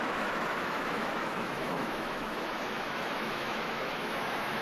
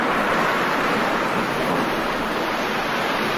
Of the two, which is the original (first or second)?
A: second